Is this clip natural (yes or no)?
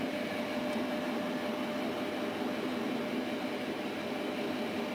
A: yes